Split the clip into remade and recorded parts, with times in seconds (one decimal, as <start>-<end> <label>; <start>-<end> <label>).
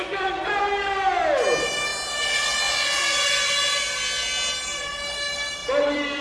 0.0-5.6 recorded; 5.6-6.2 remade